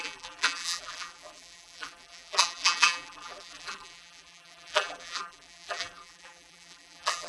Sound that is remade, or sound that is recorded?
remade